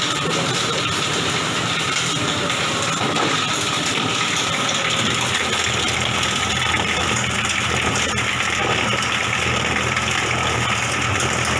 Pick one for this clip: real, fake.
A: fake